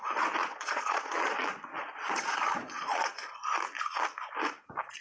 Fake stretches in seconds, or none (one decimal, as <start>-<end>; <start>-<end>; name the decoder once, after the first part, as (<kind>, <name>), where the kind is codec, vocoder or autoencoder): 0.4-3.4 (vocoder, Vocos)